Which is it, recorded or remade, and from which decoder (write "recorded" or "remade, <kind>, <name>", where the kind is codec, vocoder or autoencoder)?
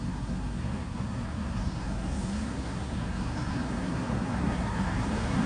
remade, codec, SNAC